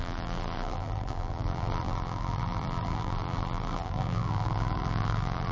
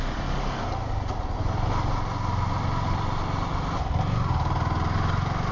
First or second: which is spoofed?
first